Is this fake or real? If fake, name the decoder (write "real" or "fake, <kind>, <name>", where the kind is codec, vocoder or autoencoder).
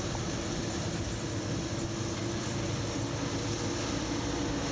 real